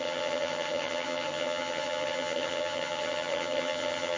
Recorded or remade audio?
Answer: remade